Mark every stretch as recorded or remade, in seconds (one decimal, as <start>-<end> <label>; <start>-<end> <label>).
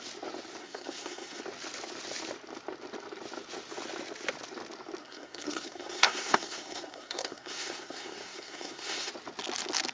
0.0-0.6 recorded; 0.6-1.4 remade; 1.4-5.0 recorded; 5.0-9.1 remade; 9.1-9.9 recorded